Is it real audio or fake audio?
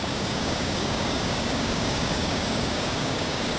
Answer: fake